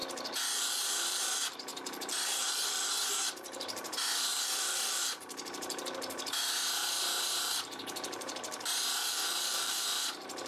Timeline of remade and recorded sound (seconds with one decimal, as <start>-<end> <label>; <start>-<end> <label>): 0.0-0.8 recorded; 0.8-10.5 remade